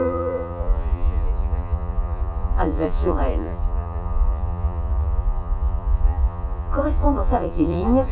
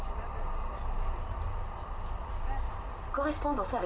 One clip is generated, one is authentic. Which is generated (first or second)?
first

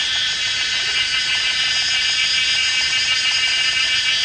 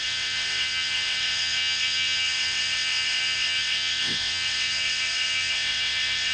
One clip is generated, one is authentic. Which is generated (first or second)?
second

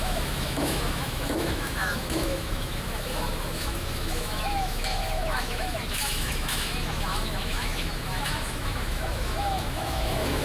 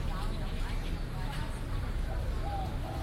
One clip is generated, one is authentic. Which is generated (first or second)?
first